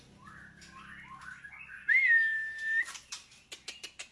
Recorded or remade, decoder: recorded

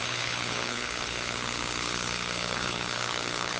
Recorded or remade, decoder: remade, codec, HILCodec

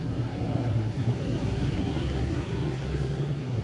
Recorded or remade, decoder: remade, codec, SNAC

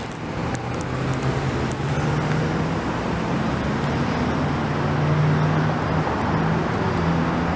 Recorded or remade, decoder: recorded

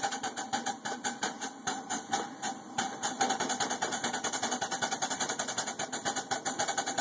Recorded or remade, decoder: recorded